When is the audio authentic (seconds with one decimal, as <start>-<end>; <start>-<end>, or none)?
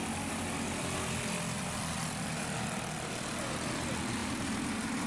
0.0-4.2